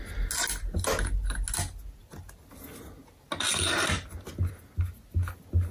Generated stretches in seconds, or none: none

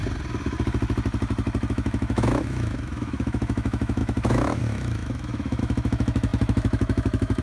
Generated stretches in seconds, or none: 1.7-7.4 (autoencoder, DAC-VAE)

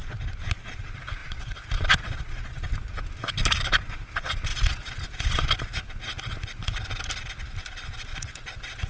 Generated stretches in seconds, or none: 1.2-2.7 (vocoder, Vocos); 4.5-5.5; 8.1-8.9

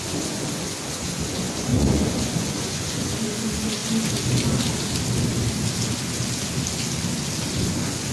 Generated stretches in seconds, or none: 0.0-3.8 (vocoder, Vocos); 7.5-8.1

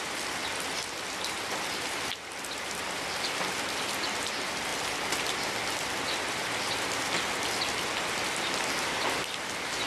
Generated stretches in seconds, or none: none

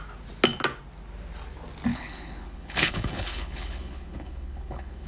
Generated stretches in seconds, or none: 1.9-5.1 (codec, HILCodec)